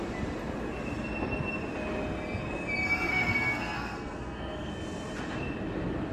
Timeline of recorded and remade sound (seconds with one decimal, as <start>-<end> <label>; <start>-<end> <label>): 0.0-3.1 recorded; 3.1-4.7 remade; 4.7-6.1 recorded